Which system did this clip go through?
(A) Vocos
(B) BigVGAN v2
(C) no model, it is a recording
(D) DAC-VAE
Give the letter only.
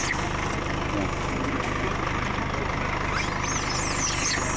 C